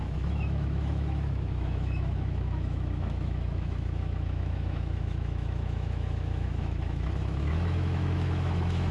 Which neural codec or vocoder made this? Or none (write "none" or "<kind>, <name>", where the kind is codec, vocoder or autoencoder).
autoencoder, DAC-VAE